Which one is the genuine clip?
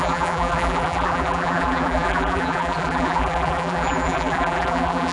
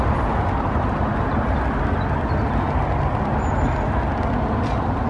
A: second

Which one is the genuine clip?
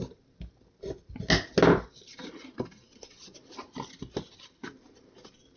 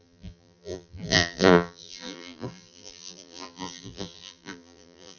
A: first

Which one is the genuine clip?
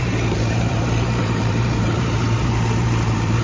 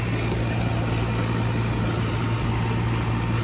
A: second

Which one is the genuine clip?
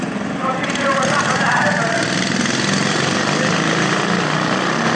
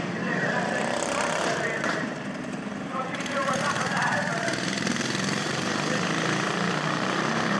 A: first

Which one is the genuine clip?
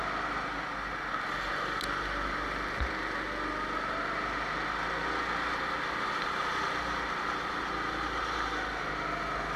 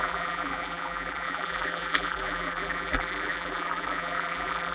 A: first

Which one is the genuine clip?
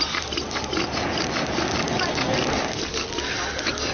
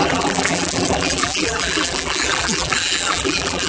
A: first